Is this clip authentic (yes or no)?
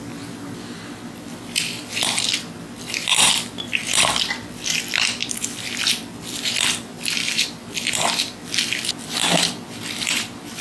no